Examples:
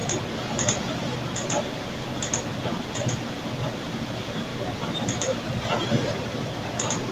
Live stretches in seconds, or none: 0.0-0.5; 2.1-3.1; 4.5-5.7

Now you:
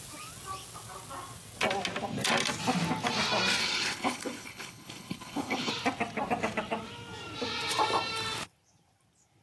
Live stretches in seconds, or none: 0.0-3.6; 5.7-9.4

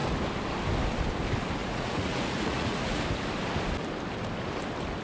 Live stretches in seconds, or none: 0.0-1.6; 3.0-5.0

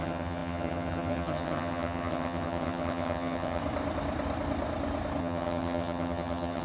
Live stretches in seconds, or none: 3.6-5.2

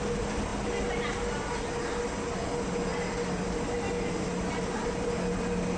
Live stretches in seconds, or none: 0.0-5.8

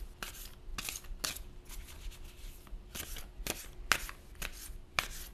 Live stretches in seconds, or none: 0.0-5.3

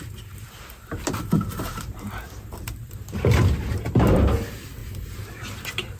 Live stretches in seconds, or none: 0.0-1.7; 4.1-4.8; 5.6-6.0

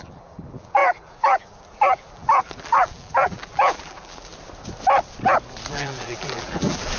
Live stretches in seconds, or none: 4.3-5.7